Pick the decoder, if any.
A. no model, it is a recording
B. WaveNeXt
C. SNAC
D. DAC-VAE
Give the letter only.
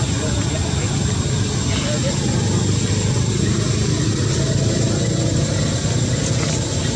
A